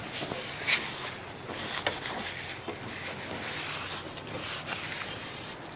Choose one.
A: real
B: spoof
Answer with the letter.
A